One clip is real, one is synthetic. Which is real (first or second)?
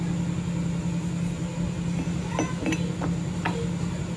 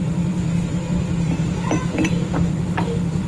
first